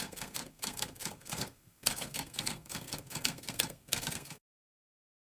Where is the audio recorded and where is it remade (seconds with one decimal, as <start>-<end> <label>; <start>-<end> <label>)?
0.0-5.3 remade